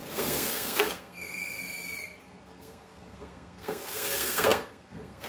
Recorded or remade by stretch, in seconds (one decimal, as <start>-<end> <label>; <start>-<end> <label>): 0.0-1.6 remade; 1.6-2.2 recorded; 2.2-5.3 remade